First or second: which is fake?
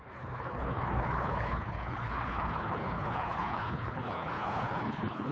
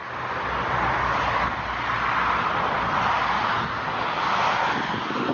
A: first